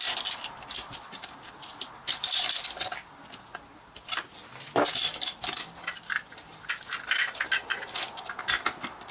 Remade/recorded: recorded